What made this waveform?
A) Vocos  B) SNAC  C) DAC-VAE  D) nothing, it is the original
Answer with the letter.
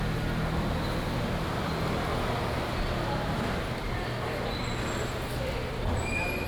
D